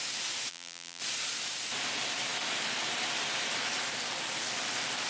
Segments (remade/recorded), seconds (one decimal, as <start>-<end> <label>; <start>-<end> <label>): 0.0-0.5 recorded; 0.5-1.0 remade; 1.0-5.1 recorded